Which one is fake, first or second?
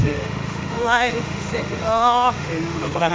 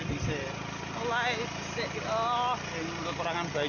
first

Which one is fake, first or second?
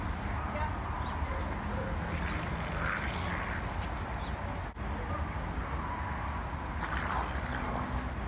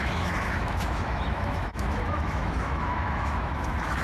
second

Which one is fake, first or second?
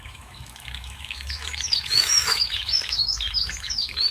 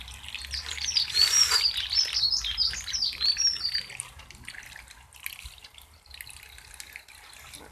first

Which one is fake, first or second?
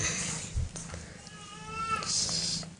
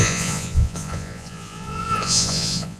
second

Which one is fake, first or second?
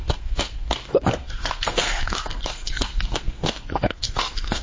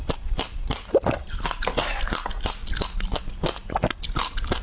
first